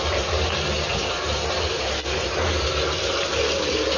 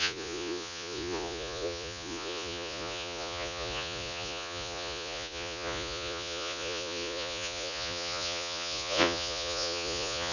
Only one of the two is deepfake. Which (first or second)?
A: second